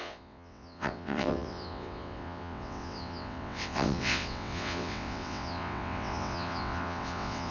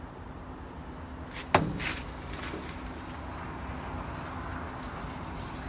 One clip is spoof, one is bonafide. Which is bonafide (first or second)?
second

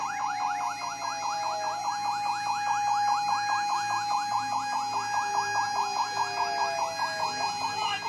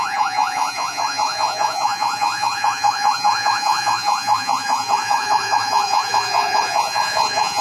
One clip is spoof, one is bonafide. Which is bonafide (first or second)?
first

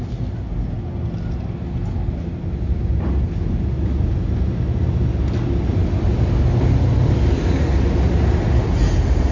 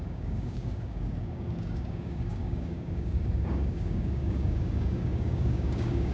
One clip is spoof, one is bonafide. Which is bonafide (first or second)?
first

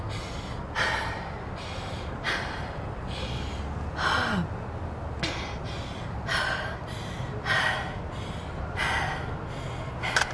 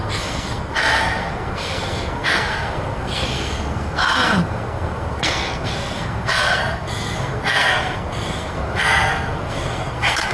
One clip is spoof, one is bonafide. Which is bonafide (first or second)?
first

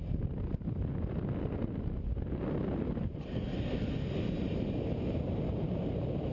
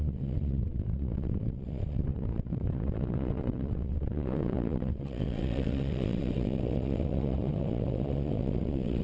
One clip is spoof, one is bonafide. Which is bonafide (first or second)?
first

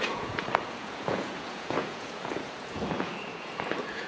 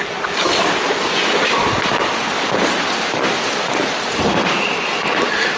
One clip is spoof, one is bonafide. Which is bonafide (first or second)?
second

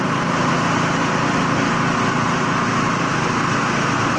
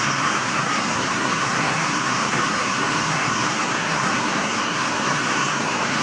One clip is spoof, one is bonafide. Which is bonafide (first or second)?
first